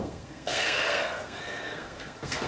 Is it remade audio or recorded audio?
remade